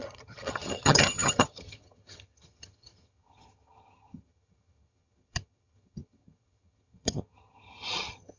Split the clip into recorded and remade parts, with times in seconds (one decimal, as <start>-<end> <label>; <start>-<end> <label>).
0.0-8.4 remade